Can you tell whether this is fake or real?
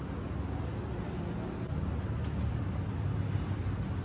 real